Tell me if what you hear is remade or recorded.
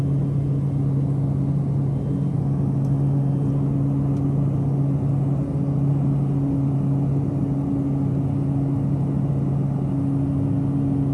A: recorded